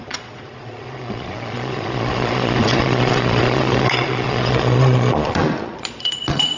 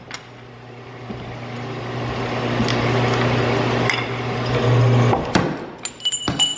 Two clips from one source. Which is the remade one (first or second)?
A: first